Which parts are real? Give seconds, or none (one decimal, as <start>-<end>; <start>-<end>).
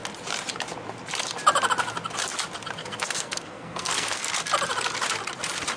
0.0-2.8; 4.3-5.8